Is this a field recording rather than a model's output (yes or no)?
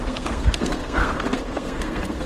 no